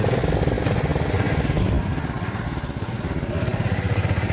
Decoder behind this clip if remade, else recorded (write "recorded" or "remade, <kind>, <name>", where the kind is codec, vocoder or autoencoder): recorded